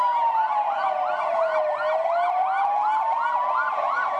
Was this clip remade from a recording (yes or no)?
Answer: no